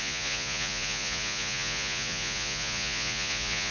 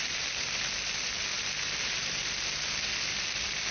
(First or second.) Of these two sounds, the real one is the second